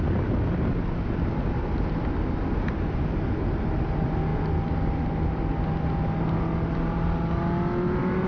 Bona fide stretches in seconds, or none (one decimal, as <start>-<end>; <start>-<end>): 0.0-8.3